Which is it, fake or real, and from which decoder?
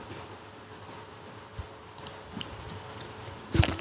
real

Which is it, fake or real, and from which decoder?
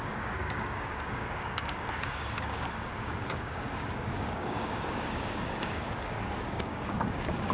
fake, codec, DAC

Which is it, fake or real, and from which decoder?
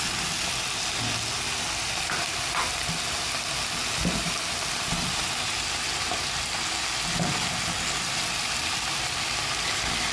real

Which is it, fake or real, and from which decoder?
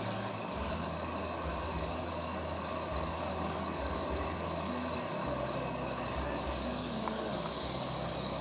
fake, codec, DAC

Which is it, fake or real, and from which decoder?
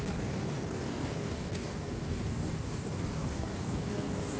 fake, codec, DAC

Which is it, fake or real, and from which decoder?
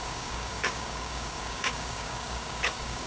fake, codec, DAC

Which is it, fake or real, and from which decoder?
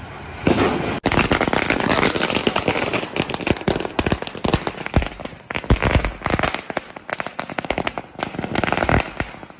real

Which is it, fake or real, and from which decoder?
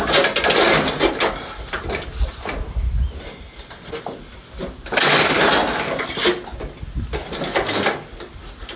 real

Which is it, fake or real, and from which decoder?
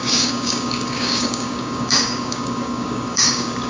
fake, codec, DAC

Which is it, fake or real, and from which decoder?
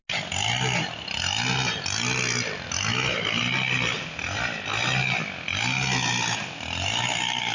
real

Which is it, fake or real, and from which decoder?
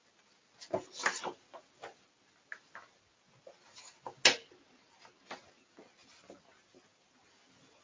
real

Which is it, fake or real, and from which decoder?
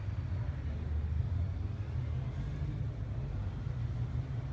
real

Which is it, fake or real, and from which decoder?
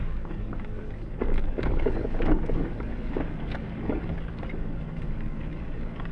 fake, codec, DAC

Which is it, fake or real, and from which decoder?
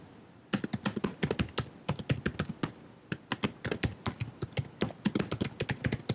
real